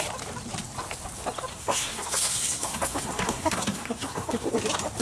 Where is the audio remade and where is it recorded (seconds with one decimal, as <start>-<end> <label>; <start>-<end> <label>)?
0.0-1.5 recorded; 1.5-4.5 remade; 4.5-5.0 recorded